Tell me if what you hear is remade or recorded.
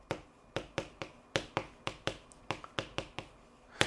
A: recorded